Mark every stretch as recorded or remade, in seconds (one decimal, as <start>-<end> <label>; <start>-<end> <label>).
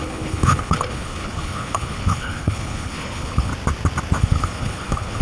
0.0-3.5 remade; 3.5-4.2 recorded; 4.2-5.2 remade